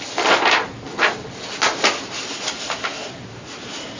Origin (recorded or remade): recorded